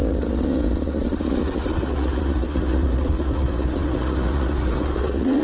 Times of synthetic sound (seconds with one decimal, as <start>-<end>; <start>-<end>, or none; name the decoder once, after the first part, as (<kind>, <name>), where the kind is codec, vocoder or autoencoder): 0.0-5.4 (vocoder, Vocos)